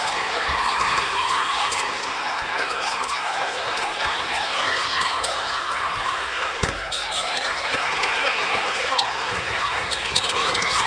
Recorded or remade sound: remade